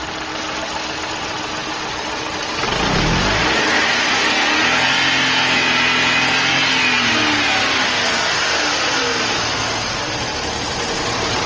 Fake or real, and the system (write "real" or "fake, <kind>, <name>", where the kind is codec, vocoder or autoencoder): real